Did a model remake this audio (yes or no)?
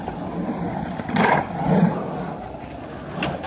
no